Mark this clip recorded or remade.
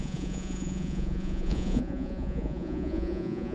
remade